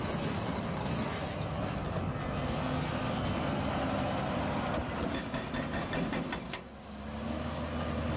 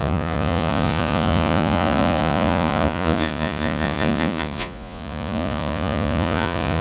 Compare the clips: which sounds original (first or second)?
first